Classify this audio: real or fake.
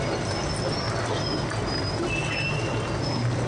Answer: real